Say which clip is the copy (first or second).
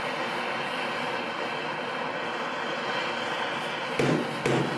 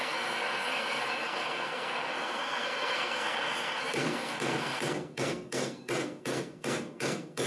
second